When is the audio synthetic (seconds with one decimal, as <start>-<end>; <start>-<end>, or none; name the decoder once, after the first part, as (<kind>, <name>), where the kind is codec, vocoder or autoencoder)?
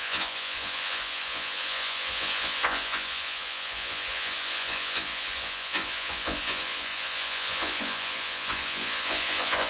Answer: 0.0-9.7 (vocoder, Vocos)